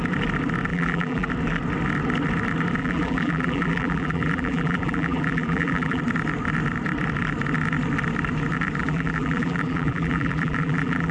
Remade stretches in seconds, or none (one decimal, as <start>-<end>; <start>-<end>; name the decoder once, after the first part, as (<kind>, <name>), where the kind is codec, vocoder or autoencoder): 0.7-1.3 (vocoder, BigVGAN v2); 2.8-6.0; 8.8-11.1